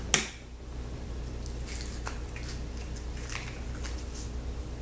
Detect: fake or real real